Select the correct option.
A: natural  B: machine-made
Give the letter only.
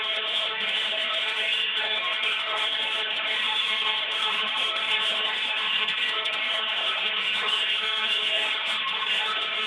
B